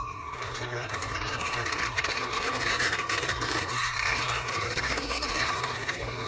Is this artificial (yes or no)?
yes